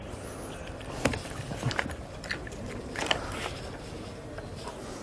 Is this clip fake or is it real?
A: real